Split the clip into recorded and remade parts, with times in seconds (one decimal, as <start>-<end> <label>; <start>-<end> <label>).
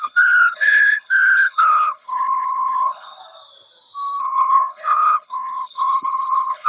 0.0-3.2 remade; 3.2-4.2 recorded; 4.2-6.7 remade